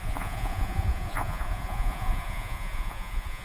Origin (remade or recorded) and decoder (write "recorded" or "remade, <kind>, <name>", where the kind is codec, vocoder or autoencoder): remade, vocoder, Vocos